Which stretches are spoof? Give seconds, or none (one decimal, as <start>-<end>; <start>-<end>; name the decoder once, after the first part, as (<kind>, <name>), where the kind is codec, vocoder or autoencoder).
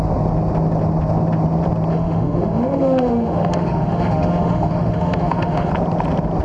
1.9-5.7 (autoencoder, DAC-VAE)